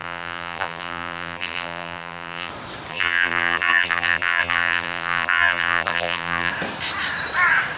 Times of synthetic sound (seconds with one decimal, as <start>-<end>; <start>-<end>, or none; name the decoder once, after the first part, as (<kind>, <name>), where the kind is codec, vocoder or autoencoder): 0.0-2.5 (vocoder, BigVGAN v2); 2.9-6.5